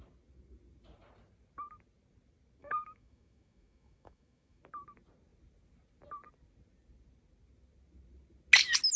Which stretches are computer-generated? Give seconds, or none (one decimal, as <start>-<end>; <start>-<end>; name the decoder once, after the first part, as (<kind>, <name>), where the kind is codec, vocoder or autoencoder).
2.6-4.6 (autoencoder, DAC-VAE)